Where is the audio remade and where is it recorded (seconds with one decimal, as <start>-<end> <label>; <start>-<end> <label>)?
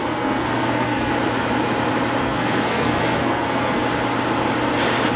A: 0.0-1.1 remade; 1.1-2.2 recorded; 2.2-3.8 remade; 3.8-5.2 recorded